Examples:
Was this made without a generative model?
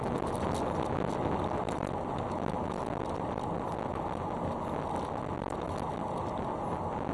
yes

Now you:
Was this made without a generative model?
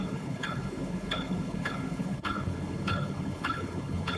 no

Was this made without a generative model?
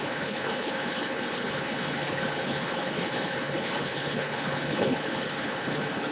no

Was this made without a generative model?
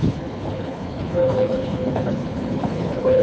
no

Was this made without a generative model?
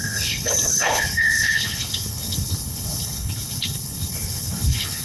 no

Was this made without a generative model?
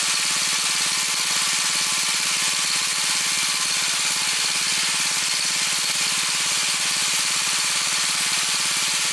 yes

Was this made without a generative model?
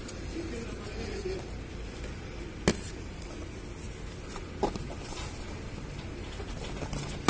yes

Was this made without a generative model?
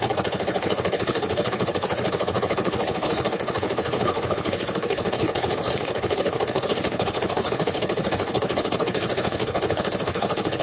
no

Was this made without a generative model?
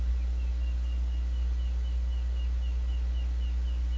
yes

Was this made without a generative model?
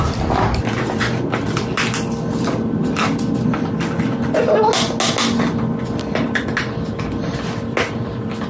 yes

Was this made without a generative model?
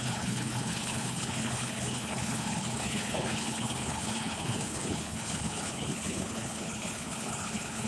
no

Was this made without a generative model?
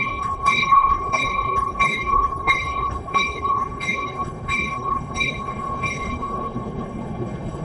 no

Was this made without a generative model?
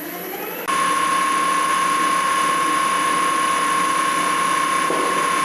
yes